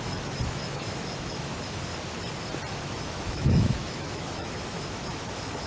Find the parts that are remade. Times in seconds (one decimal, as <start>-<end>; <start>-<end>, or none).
0.0-1.9; 2.7-5.7

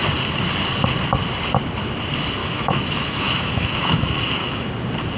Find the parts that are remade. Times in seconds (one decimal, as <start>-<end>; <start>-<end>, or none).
2.4-4.7

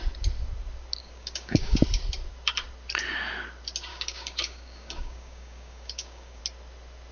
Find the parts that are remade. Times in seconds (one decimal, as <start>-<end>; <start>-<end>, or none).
1.0-1.8; 3.9-6.4

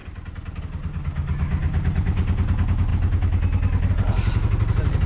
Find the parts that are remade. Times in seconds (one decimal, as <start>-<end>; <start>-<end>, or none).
none

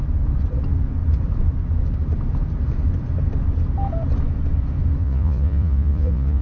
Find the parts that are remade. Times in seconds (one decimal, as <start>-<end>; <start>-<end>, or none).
5.0-6.4

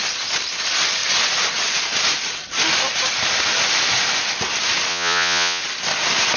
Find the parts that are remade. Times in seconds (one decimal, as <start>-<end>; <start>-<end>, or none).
4.9-5.6